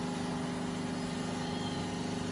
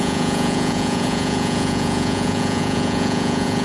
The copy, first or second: second